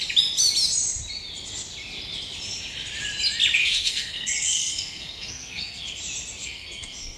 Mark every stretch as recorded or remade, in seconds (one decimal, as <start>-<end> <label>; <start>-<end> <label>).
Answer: 0.0-3.6 recorded; 3.6-6.0 remade; 6.0-6.4 recorded; 6.4-7.2 remade